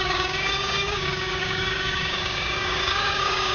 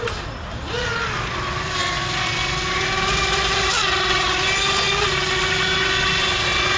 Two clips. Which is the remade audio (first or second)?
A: first